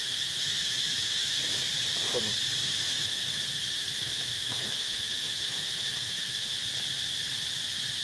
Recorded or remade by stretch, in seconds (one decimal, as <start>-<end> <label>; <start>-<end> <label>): 0.0-1.4 remade; 1.4-2.6 recorded; 2.6-3.2 remade; 3.2-3.7 recorded; 3.7-6.6 remade; 6.6-8.0 recorded